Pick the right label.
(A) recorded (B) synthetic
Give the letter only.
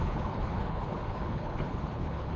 B